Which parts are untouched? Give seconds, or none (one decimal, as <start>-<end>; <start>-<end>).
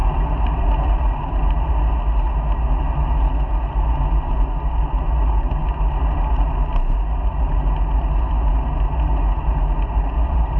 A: 1.7-10.6